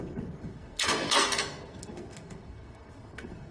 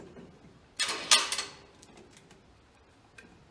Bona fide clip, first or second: second